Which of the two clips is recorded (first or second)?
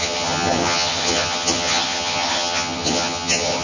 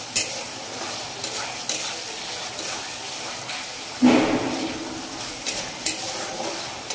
second